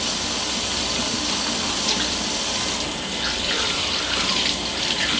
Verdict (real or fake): real